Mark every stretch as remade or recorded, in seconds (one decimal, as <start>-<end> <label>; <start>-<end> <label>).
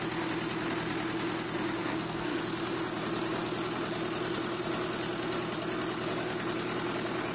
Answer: 0.0-1.8 recorded; 1.8-2.4 remade; 2.4-7.3 recorded